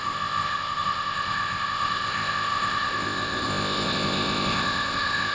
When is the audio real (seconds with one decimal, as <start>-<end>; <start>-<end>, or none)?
none